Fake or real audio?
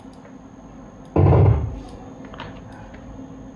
real